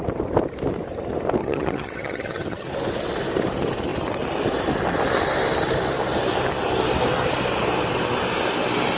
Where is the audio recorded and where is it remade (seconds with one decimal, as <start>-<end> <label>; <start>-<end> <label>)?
0.0-1.4 recorded; 1.4-2.7 remade; 2.7-9.0 recorded